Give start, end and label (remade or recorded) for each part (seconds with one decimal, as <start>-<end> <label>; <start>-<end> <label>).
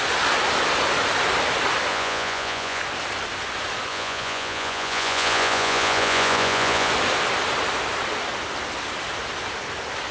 0.0-1.9 recorded; 1.9-2.8 remade; 2.8-3.9 recorded; 3.9-6.9 remade; 6.9-10.1 recorded